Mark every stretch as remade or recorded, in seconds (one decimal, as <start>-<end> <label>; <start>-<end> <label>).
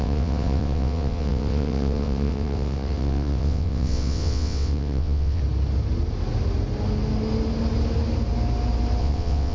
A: 0.0-5.4 remade; 5.4-9.0 recorded; 9.0-9.5 remade